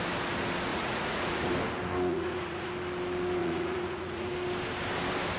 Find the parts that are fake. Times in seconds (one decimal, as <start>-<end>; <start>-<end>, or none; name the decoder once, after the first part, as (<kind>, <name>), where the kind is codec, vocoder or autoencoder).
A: 0.7-1.5 (vocoder, Vocos); 2.1-2.7; 3.4-4.3